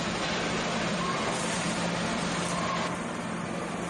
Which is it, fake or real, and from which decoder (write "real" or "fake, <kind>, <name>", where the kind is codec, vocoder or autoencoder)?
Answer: real